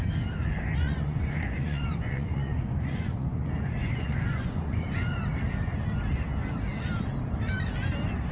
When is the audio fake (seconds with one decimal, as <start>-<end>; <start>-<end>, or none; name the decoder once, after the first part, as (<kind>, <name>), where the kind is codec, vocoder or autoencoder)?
0.8-5.2 (vocoder, Vocos)